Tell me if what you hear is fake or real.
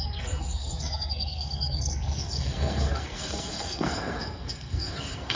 fake